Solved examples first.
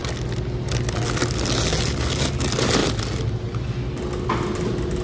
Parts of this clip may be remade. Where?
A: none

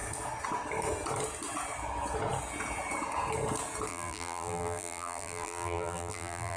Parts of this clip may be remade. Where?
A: 3.9-6.6 (vocoder, BigVGAN v2)

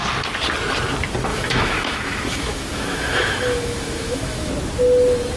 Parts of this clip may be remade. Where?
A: 1.3-4.5 (autoencoder, DAC-VAE)

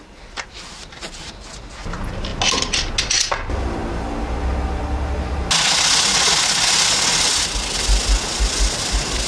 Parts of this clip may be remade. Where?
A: none

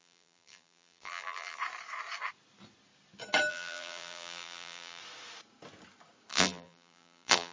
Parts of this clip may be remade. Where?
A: 0.0-1.6 (vocoder, BigVGAN v2); 3.5-5.0; 6.3-7.5

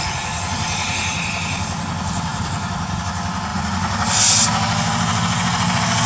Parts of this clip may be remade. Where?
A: 2.3-3.0 (vocoder, BigVGAN v2); 3.5-4.2

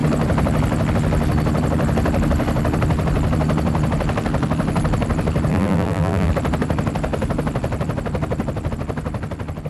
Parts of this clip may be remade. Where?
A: 5.5-6.3 (vocoder, BigVGAN v2)

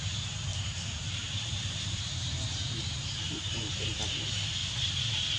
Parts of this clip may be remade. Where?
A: 0.5-3.7 (vocoder, BigVGAN v2)